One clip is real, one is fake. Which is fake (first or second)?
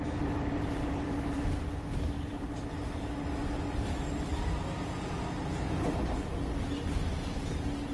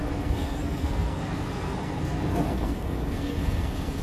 second